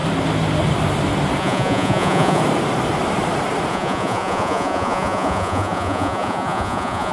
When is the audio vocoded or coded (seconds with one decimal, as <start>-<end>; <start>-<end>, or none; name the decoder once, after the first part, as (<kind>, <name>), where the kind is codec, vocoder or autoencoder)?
1.4-2.4 (vocoder, Vocos); 3.7-7.1